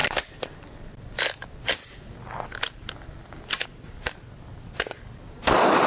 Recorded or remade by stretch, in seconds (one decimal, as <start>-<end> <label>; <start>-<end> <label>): 0.0-5.9 recorded